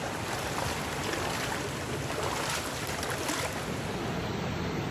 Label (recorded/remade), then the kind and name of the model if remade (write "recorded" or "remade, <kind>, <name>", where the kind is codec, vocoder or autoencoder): recorded